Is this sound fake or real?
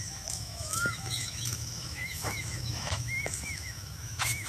fake